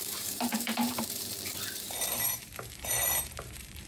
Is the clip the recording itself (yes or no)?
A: no